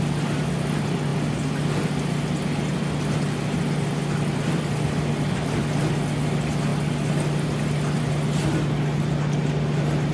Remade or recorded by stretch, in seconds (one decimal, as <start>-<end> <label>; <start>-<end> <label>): 0.0-10.1 recorded